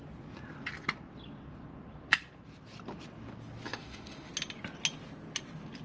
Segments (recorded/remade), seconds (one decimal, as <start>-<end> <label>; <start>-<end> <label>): 0.0-3.7 recorded; 3.7-4.3 remade; 4.3-5.8 recorded